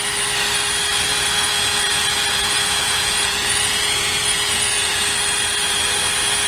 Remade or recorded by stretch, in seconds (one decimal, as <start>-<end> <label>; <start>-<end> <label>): 0.0-1.1 recorded; 1.1-5.0 remade; 5.0-6.5 recorded